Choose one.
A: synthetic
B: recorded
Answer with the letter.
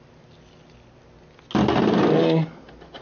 B